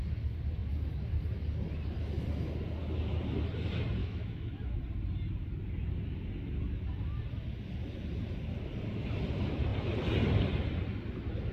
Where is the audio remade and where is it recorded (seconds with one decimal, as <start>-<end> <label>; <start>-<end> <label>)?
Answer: 0.0-4.0 recorded; 4.0-4.8 remade; 4.8-11.5 recorded